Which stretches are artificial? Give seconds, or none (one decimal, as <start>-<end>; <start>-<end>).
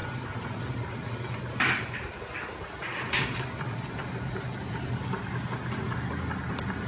none